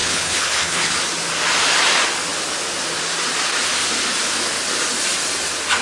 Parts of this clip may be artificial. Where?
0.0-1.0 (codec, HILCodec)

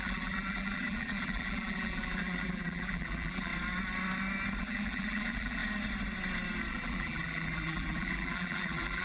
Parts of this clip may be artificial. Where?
0.0-3.5 (vocoder, BigVGAN v2); 4.6-5.6; 6.7-9.0

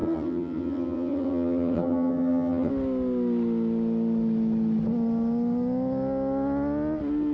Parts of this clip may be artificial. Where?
0.0-2.7 (vocoder, HiFi-GAN)

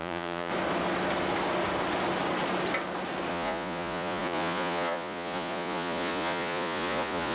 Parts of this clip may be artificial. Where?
0.0-0.5 (vocoder, Vocos); 3.3-7.3

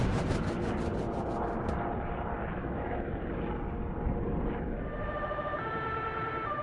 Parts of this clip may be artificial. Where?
2.6-3.1 (autoencoder, DAC-VAE)

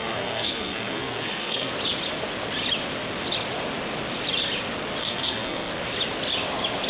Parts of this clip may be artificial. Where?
0.0-1.7 (codec, SNAC); 5.0-5.7